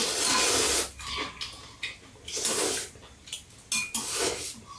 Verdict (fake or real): real